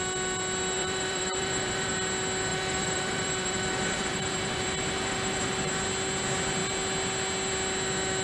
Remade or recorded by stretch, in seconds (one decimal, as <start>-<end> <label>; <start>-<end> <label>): 0.0-0.8 recorded; 0.8-1.9 remade; 1.9-2.5 recorded; 2.5-5.7 remade; 5.7-8.2 recorded